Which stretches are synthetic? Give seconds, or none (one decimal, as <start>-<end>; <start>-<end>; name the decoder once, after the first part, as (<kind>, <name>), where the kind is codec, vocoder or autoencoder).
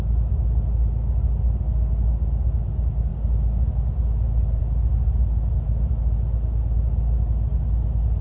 none